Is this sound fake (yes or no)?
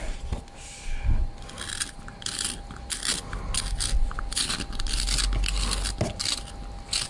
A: no